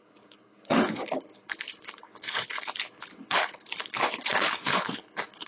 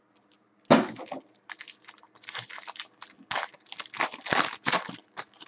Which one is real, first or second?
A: second